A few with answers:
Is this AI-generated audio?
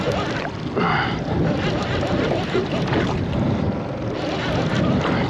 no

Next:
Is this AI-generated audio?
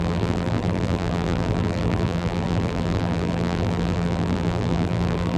yes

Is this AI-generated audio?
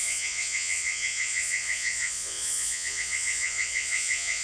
yes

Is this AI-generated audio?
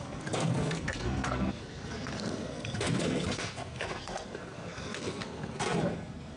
yes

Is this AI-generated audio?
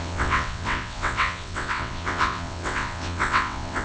yes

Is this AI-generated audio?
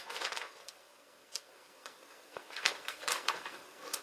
yes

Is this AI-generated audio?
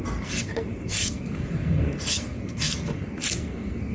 yes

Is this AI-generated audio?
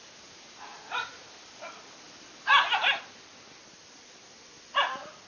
no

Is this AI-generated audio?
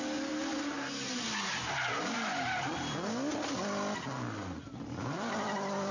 no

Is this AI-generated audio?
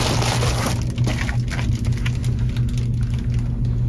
no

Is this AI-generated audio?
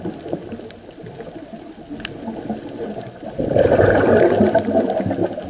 no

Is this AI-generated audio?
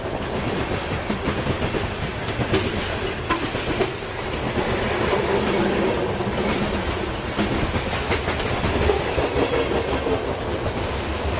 no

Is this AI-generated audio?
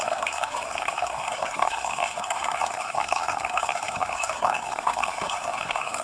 yes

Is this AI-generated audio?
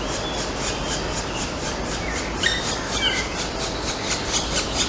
no